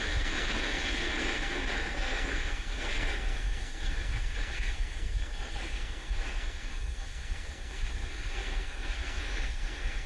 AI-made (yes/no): yes